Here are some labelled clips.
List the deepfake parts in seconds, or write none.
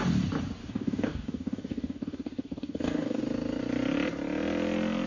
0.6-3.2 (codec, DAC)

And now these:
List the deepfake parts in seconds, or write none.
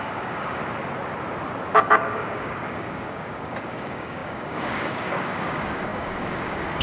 0.0-0.6 (codec, DAC); 1.7-6.8